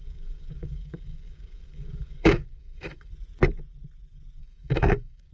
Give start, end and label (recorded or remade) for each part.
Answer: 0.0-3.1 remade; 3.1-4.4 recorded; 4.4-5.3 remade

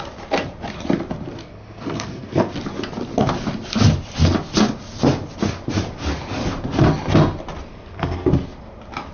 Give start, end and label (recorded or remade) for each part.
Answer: 0.0-1.4 recorded; 1.4-2.5 remade; 2.5-7.7 recorded; 7.7-8.3 remade; 8.3-9.1 recorded